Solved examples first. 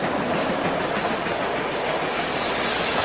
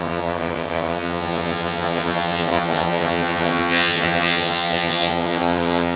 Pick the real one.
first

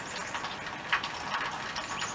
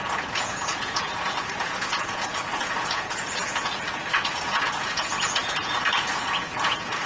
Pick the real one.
first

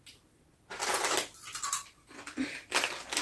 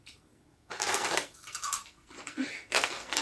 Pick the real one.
first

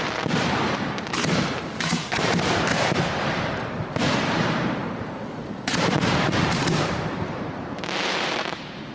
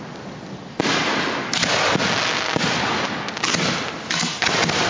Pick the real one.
second